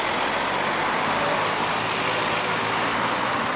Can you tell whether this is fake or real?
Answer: real